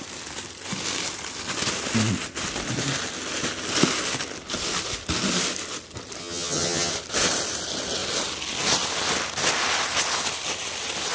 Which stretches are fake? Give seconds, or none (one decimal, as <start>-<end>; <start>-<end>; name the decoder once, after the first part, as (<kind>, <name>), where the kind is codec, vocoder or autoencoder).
6.2-6.9 (vocoder, HiFi-GAN)